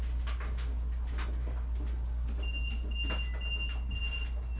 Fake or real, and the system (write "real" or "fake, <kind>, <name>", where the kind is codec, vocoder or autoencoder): real